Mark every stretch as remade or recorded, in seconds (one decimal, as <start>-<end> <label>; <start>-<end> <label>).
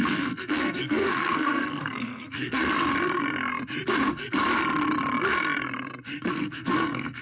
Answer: 0.0-2.6 remade; 2.6-6.3 recorded; 6.3-7.2 remade